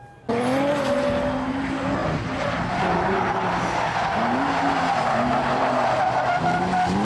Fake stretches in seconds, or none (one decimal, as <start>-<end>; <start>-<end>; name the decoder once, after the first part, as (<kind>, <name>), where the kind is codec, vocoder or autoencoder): none